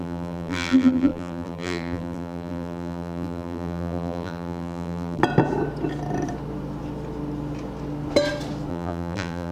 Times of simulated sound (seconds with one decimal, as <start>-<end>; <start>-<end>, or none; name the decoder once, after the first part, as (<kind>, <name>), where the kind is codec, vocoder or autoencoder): 0.0-5.2 (vocoder, BigVGAN v2); 8.7-9.5